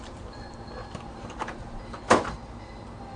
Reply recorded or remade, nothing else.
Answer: recorded